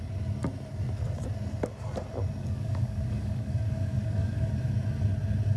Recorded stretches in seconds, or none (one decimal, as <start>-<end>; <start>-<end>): 0.0-2.4; 4.5-5.6